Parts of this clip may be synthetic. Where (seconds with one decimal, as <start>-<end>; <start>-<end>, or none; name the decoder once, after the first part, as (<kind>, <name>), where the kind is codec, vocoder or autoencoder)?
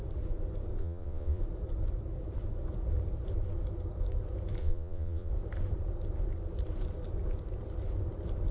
0.8-1.4 (vocoder, Vocos); 4.6-5.3